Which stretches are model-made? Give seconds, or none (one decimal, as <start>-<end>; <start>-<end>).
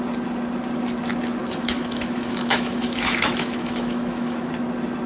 1.4-4.5